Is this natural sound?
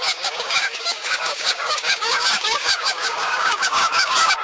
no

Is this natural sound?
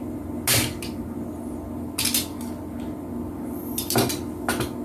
yes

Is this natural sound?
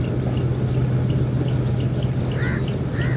yes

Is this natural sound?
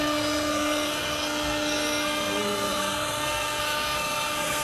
no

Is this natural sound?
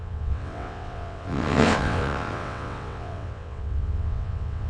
no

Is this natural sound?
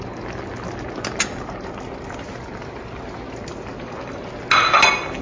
yes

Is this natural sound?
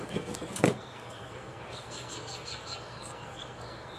no